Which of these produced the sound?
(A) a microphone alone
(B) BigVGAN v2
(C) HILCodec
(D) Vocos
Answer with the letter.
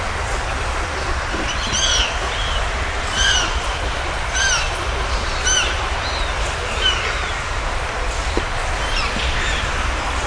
B